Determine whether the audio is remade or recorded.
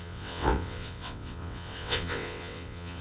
remade